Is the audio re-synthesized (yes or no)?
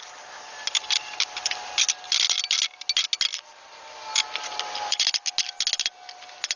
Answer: no